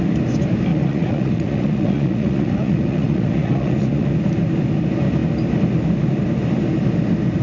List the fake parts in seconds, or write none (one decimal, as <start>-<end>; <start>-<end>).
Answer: 0.7-4.1